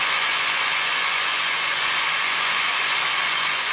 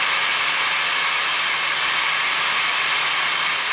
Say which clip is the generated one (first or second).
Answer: first